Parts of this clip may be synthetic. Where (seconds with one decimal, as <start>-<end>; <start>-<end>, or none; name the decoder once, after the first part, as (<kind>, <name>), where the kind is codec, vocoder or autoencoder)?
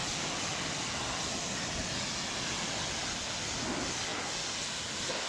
none